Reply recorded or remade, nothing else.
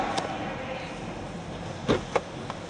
recorded